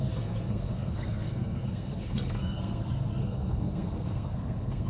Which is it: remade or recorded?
remade